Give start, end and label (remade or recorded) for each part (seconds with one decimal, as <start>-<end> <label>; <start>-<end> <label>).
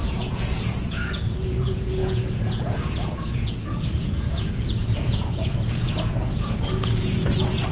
0.0-7.7 remade